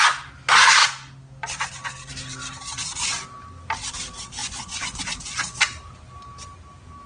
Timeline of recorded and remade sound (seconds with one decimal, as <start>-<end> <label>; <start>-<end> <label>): 0.0-4.4 recorded; 4.4-5.0 remade; 5.0-7.1 recorded